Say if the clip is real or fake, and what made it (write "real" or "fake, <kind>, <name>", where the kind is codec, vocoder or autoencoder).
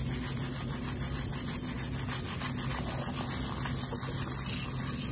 real